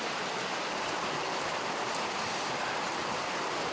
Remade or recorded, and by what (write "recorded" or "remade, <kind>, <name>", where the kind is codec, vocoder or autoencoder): recorded